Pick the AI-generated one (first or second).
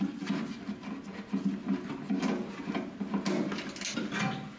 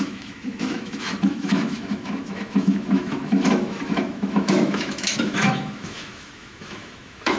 second